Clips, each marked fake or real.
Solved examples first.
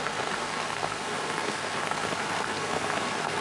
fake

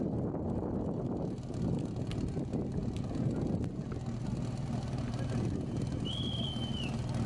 real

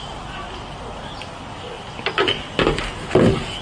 real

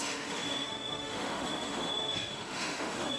fake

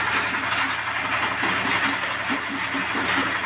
real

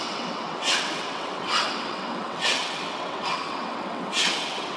fake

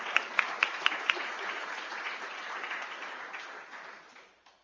fake